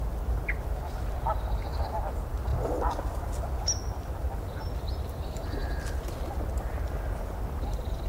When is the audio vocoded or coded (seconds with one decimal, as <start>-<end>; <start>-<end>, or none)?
none

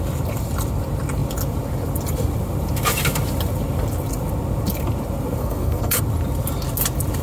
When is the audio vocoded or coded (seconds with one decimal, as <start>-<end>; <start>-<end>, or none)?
5.4-6.0

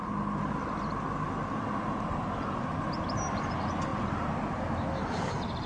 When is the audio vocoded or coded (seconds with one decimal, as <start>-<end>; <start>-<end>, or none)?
none